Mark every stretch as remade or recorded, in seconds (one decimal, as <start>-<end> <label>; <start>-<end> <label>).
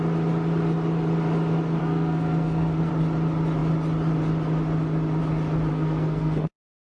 0.0-1.8 recorded; 1.8-2.9 remade; 2.9-5.7 recorded; 5.7-6.8 remade